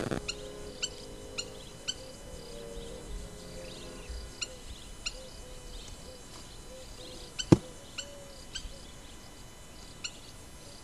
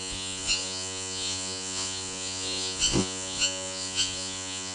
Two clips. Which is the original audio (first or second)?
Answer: first